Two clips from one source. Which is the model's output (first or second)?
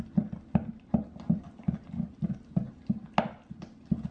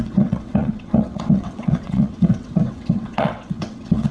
second